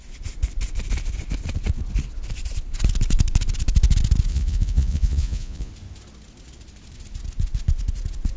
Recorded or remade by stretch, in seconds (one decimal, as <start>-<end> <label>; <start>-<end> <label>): 0.0-4.3 recorded; 4.3-5.7 remade; 5.7-8.4 recorded

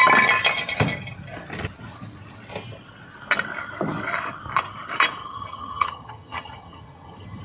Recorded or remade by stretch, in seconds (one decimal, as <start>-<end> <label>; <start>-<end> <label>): 0.0-5.2 recorded; 5.2-7.4 remade

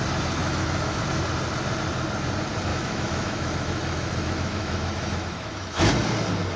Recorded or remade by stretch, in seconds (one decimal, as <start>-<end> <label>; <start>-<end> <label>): 0.0-0.4 recorded; 0.4-1.0 remade; 1.0-2.7 recorded; 2.7-5.9 remade; 5.9-6.6 recorded

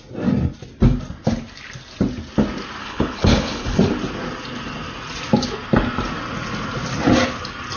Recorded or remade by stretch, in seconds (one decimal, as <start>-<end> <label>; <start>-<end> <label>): 0.0-2.8 recorded; 2.8-3.8 remade; 3.8-7.8 recorded

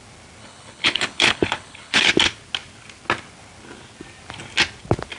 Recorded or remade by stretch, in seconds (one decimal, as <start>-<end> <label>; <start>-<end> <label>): 0.0-0.4 recorded; 0.4-2.1 remade; 2.1-5.2 recorded

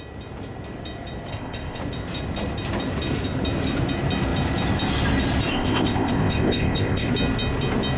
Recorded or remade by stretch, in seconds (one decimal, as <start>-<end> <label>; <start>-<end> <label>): 0.0-1.3 recorded; 1.3-1.8 remade; 1.8-5.5 recorded; 5.5-7.1 remade; 7.1-8.0 recorded